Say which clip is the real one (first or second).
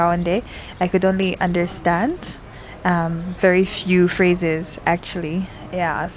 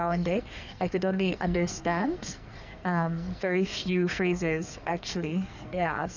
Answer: first